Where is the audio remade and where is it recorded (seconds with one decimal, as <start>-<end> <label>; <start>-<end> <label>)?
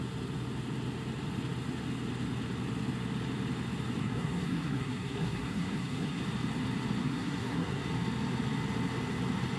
0.0-4.0 recorded; 4.0-6.2 remade; 6.2-7.0 recorded; 7.0-7.8 remade; 7.8-9.6 recorded